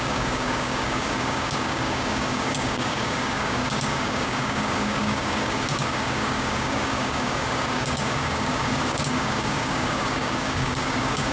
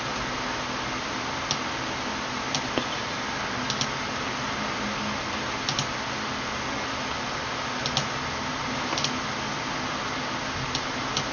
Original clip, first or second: second